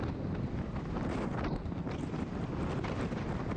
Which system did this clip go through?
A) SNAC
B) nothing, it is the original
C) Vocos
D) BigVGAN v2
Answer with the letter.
B